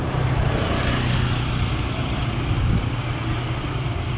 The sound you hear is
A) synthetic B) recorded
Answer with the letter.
B